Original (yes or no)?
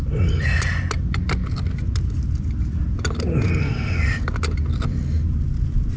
yes